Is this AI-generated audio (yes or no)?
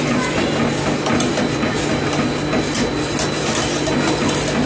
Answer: no